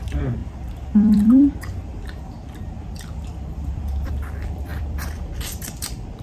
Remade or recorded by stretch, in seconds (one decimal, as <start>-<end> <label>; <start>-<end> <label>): 0.0-6.2 remade